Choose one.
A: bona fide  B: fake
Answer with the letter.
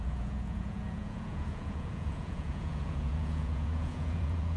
B